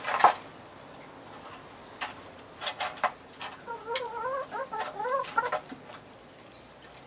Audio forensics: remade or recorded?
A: recorded